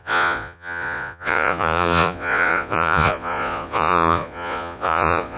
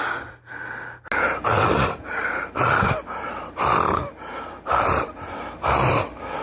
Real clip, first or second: second